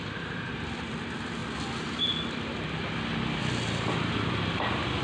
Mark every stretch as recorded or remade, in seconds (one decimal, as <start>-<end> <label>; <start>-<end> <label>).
0.0-5.0 remade